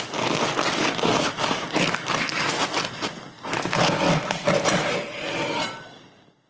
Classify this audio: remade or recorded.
recorded